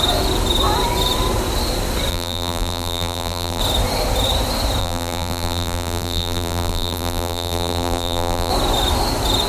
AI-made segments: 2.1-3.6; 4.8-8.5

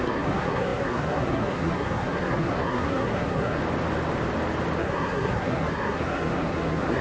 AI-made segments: 0.0-3.6; 4.8-7.0

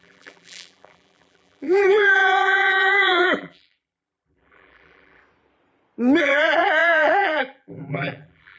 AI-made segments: 0.0-5.2; 6.2-8.6

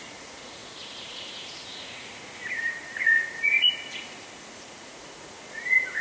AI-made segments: 0.0-6.0

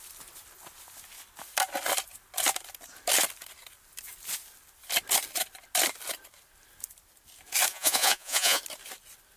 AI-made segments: 7.7-8.6

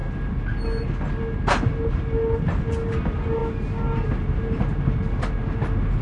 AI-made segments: none